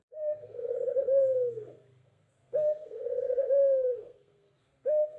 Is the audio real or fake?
fake